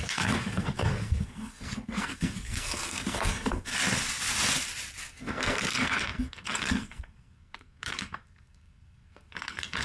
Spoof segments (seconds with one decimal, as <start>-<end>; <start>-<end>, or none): 0.0-3.7; 5.1-9.8